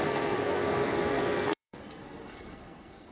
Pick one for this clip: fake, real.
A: fake